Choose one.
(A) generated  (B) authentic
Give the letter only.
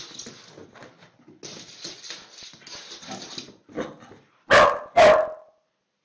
B